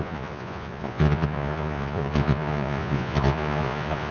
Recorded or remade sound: remade